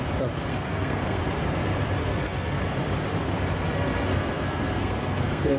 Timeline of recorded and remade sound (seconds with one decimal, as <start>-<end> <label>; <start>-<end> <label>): 0.0-0.5 recorded; 0.5-1.2 remade; 1.2-2.0 recorded; 2.0-2.6 remade; 2.6-4.1 recorded; 4.1-5.6 remade